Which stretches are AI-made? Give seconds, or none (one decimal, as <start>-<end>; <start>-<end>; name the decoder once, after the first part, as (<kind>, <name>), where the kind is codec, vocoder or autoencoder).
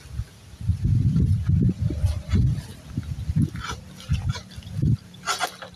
0.7-1.2 (vocoder, BigVGAN v2); 2.7-5.1